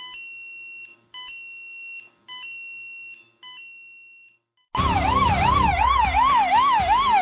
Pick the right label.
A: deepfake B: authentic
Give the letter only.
B